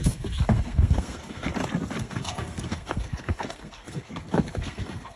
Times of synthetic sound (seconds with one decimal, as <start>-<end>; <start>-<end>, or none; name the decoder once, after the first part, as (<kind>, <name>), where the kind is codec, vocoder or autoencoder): 0.0-1.5 (codec, SNAC); 2.0-5.2